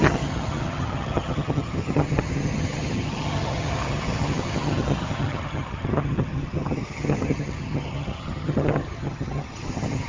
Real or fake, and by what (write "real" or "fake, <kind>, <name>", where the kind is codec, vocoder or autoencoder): fake, vocoder, HiFi-GAN